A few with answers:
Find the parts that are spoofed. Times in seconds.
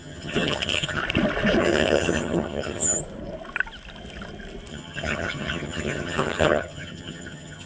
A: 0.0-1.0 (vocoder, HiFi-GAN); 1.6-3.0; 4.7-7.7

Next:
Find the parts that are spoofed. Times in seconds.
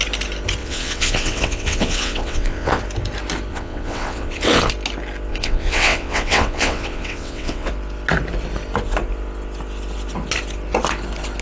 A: 0.6-2.8 (vocoder, WaveNeXt); 3.5-4.7; 5.3-7.7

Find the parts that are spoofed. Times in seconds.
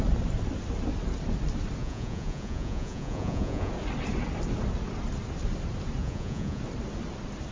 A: 1.8-3.7 (vocoder, Vocos); 6.0-6.6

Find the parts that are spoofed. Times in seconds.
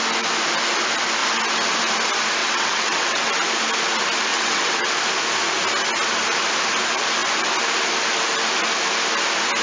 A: 2.4-3.3 (vocoder, WaveNeXt); 4.3-4.9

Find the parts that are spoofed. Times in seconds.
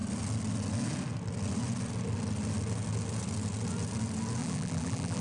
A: 4.4-5.2 (vocoder, BigVGAN v2)